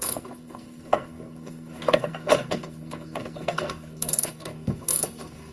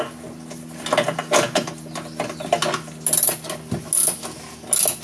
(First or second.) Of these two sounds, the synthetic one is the first